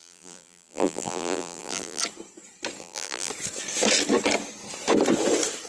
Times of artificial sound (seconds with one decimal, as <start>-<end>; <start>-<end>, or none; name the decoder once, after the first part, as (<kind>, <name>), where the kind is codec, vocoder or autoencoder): 0.0-2.0 (vocoder, BigVGAN v2); 2.8-3.3